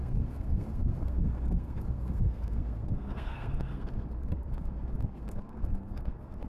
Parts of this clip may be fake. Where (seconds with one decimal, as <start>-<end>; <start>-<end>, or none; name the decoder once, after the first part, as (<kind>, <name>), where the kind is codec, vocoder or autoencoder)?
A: 0.0-6.5 (codec, SNAC)